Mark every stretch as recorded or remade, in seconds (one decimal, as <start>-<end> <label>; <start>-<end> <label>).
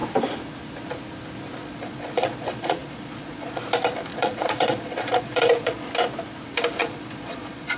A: 0.0-1.6 recorded; 1.6-3.6 remade; 3.6-4.1 recorded; 4.1-5.9 remade; 5.9-6.8 recorded; 6.8-7.8 remade